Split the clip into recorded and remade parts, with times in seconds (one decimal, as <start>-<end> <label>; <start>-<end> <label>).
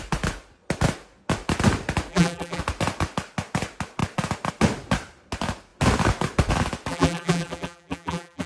0.0-2.1 recorded; 2.1-2.6 remade; 2.6-6.9 recorded; 6.9-8.5 remade